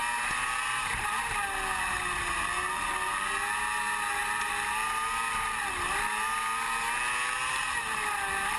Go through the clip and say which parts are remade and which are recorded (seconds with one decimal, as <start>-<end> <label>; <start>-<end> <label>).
0.0-8.6 recorded